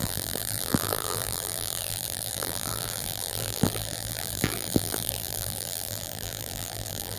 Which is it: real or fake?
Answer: fake